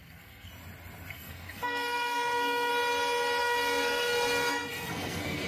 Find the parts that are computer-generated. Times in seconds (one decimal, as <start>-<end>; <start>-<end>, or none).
0.0-0.5; 1.1-2.7; 3.4-5.5